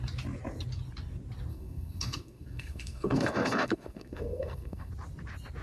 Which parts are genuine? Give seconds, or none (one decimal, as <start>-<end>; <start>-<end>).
0.0-1.5; 4.9-5.6